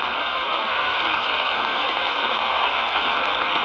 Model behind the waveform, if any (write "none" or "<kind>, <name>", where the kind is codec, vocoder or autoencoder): codec, SNAC